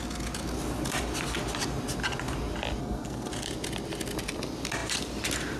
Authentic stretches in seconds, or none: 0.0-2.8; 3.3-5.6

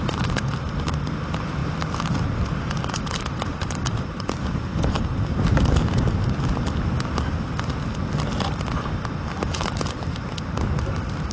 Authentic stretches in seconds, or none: 6.2-10.8

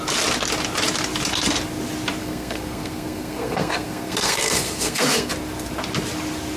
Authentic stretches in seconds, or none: 0.0-2.2; 5.3-6.6

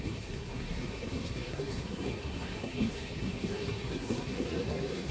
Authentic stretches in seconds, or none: none